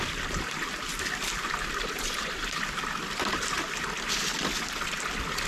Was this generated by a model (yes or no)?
no